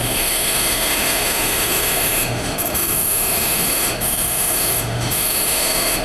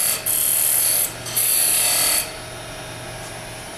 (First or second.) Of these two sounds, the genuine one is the second